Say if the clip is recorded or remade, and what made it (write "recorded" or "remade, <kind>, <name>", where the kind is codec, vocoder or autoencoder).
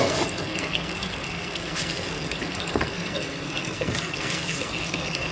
remade, codec, SNAC